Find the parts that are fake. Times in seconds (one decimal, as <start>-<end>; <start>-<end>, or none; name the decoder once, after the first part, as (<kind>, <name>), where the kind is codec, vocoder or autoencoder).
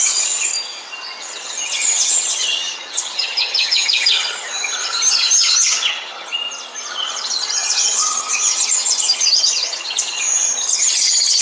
0.0-0.5 (vocoder, HiFi-GAN); 1.2-6.3; 6.9-11.4